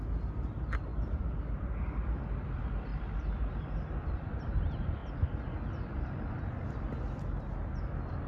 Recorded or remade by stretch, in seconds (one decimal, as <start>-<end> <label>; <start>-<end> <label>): 0.0-0.9 recorded; 0.9-2.2 remade; 2.2-2.9 recorded; 2.9-3.5 remade; 3.5-8.3 recorded